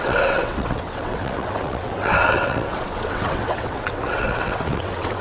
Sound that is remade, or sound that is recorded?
remade